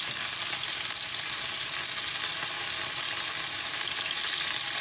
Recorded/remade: recorded